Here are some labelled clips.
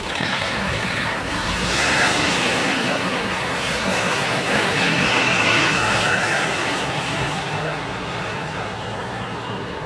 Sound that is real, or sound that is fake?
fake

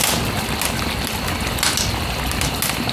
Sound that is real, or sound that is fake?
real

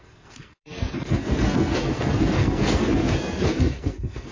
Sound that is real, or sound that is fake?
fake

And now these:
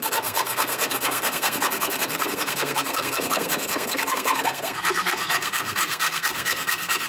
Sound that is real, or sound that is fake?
fake